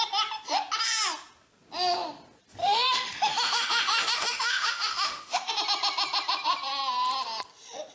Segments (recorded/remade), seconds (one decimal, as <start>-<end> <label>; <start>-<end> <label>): 0.0-2.6 recorded; 2.6-5.5 remade; 5.5-7.9 recorded